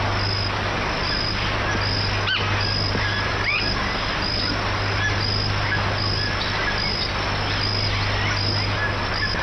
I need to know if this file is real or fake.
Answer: real